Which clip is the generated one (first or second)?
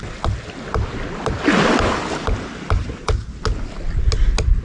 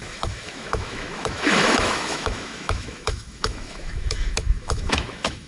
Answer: second